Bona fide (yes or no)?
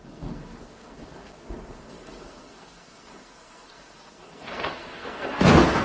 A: no